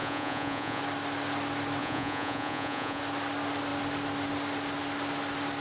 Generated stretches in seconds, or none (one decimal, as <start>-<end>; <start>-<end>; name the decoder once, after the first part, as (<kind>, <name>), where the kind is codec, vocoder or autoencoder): 0.0-0.8 (vocoder, Vocos); 1.8-3.0